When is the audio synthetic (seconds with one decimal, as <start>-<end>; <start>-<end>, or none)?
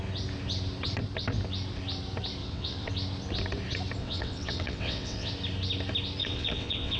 2.4-2.9; 4.0-5.3; 6.2-7.0